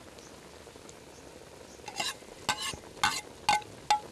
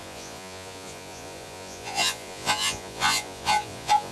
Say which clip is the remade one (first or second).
second